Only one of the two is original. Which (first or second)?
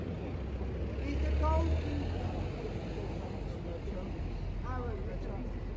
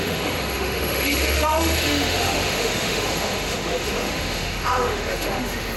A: first